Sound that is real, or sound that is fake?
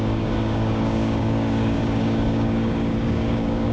fake